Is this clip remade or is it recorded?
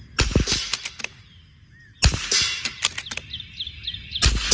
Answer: recorded